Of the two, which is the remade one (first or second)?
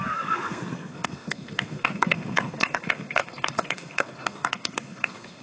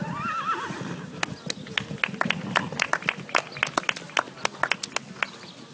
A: first